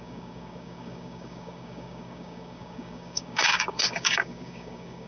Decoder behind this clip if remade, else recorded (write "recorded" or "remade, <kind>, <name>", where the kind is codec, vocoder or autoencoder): remade, codec, DAC